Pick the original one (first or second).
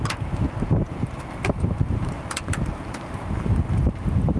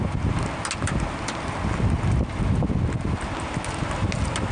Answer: second